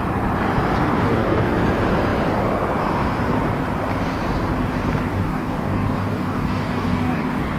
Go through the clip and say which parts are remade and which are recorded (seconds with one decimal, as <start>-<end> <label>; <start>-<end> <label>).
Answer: 0.0-0.9 recorded; 0.9-1.5 remade; 1.5-5.1 recorded; 5.1-7.6 remade